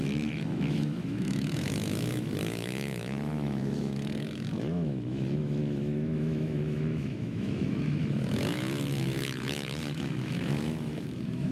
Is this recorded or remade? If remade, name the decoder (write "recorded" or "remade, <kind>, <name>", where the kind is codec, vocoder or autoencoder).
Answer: remade, autoencoder, DAC-VAE